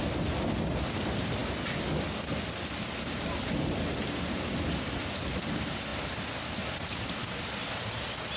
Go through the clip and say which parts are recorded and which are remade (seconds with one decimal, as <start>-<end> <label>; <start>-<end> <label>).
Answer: 0.0-8.4 recorded

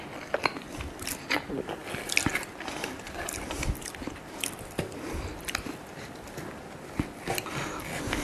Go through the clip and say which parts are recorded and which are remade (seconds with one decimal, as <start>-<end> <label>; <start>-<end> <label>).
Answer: 0.0-8.2 recorded

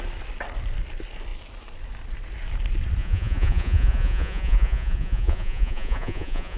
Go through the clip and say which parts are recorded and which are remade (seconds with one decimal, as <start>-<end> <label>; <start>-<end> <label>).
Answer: 0.0-3.0 recorded; 3.0-6.6 remade

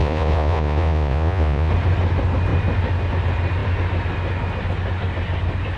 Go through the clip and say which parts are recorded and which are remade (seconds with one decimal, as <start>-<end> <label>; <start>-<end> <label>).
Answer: 0.0-1.7 remade; 1.7-5.8 recorded

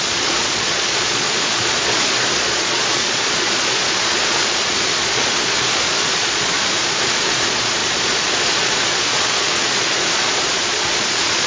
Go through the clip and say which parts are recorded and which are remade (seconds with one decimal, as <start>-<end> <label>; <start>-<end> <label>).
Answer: 0.0-11.5 remade